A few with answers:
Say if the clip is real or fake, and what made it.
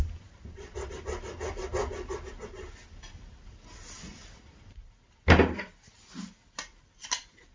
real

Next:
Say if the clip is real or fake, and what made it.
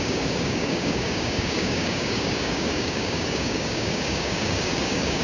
fake, codec, DAC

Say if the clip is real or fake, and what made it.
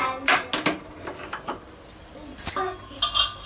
real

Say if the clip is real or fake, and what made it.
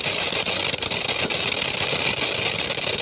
real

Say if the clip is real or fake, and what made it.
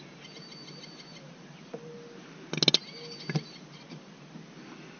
real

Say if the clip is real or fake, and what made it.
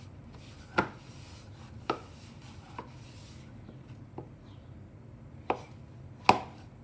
real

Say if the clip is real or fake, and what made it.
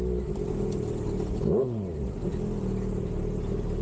real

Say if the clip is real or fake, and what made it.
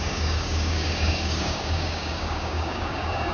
fake, codec, DAC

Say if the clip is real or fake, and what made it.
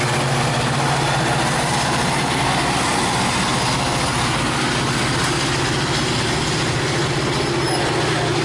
real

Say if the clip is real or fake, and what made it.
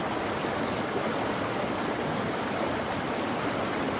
real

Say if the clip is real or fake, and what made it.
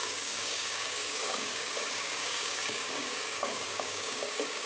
fake, codec, DAC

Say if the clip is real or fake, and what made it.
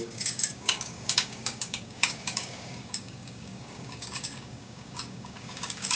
fake, codec, DAC